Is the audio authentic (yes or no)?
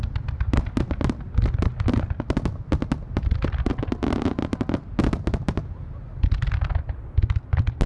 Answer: yes